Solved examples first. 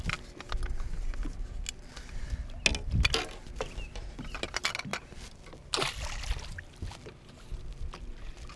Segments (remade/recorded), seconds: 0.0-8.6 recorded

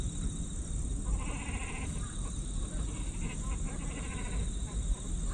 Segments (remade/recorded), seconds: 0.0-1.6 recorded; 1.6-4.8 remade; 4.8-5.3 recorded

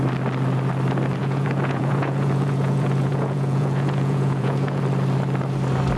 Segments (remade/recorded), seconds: 0.0-1.2 recorded; 1.2-4.8 remade; 4.8-6.0 recorded